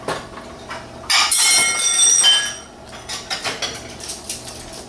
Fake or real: real